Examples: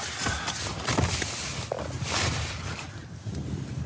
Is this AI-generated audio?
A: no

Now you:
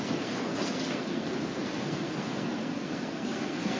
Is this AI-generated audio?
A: yes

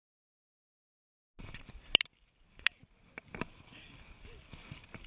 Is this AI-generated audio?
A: no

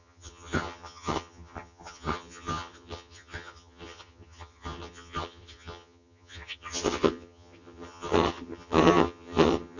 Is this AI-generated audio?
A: yes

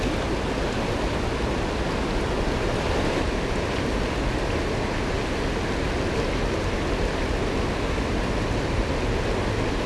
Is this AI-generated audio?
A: no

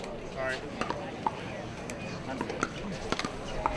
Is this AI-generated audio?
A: no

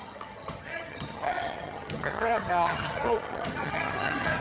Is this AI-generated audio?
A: yes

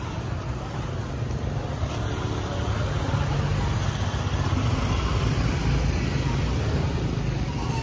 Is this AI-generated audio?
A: no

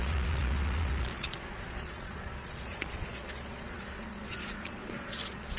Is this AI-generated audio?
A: yes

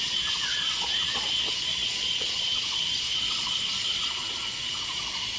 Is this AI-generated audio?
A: yes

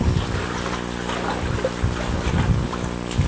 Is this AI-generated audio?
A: no